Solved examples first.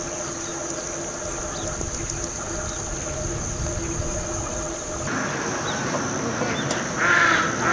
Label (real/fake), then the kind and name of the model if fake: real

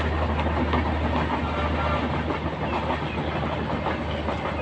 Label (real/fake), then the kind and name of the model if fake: real